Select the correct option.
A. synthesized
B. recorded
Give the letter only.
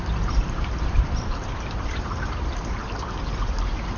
A